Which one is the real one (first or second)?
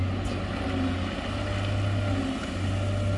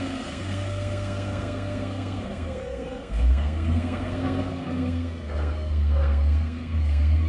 first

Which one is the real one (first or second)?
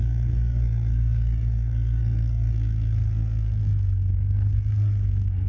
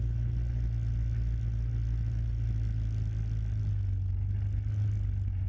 second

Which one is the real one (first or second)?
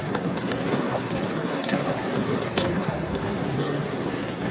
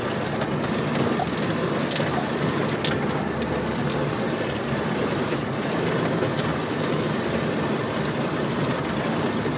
second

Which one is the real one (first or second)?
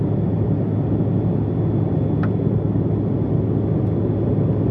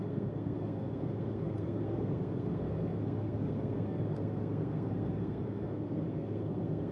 first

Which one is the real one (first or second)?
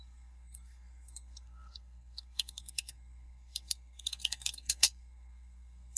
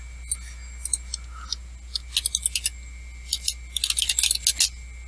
second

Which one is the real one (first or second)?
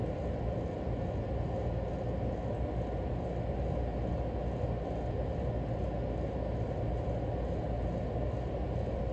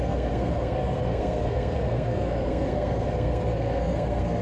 first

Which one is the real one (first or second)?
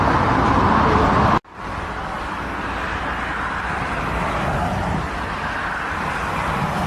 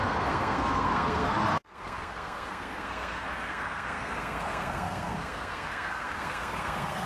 first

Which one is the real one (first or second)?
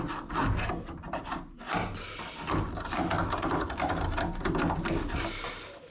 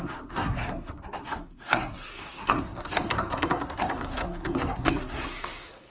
first